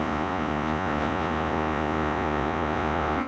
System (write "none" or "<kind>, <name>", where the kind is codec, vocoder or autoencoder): vocoder, Vocos